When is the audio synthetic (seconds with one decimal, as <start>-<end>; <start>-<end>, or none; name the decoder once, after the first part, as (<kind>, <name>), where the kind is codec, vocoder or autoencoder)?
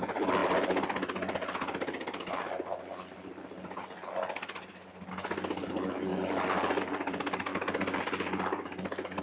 none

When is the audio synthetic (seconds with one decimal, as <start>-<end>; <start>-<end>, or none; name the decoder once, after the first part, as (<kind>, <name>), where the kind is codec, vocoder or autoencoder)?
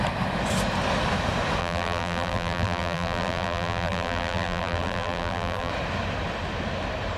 1.6-5.7 (vocoder, BigVGAN v2)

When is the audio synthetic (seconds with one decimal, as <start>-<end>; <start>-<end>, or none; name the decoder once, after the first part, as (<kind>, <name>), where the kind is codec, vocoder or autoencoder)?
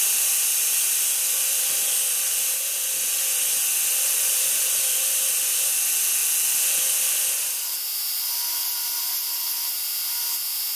none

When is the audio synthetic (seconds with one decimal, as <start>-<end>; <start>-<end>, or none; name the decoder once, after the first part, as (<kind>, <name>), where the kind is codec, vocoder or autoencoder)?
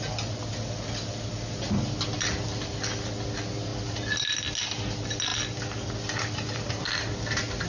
3.7-4.4 (vocoder, BigVGAN v2)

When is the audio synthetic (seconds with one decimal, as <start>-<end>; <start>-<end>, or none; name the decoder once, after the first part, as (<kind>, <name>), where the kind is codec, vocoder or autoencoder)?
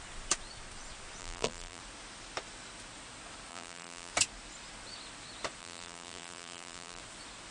1.2-1.8 (vocoder, BigVGAN v2); 3.5-4.1; 5.6-7.0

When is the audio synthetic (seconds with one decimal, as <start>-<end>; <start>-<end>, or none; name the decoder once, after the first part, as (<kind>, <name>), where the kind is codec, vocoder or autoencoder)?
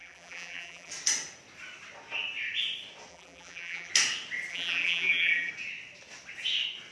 0.0-0.9 (vocoder, BigVGAN v2); 3.1-3.9; 4.5-5.5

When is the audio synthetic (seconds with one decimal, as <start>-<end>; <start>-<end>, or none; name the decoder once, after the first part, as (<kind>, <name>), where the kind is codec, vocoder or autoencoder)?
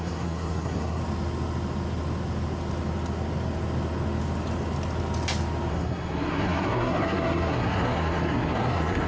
0.0-1.0 (codec, SNAC); 5.7-9.1